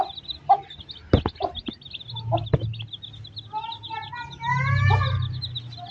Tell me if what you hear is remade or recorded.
recorded